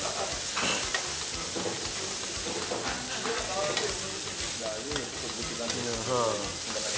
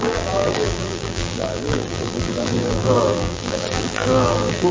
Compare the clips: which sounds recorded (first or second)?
first